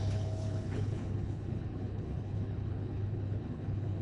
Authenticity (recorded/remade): remade